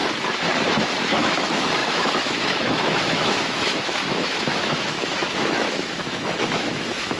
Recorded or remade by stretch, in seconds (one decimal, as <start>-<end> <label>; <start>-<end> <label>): 0.0-1.1 recorded; 1.1-7.2 remade